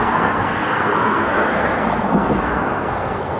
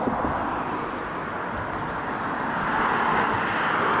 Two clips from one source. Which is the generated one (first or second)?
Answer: first